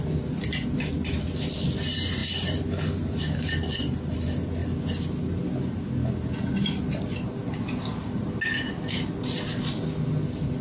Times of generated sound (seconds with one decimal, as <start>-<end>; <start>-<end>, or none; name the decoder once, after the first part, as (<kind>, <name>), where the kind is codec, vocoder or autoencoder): none